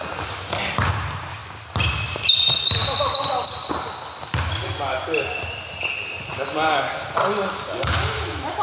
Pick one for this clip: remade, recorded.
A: recorded